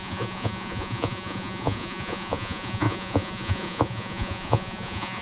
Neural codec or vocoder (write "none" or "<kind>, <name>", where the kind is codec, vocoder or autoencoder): vocoder, Vocos